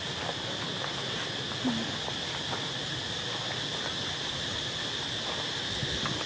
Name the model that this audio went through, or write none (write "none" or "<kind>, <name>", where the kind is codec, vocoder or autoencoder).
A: none